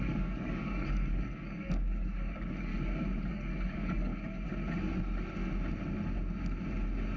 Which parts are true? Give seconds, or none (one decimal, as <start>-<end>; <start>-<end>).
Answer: 2.7-3.3; 4.1-7.2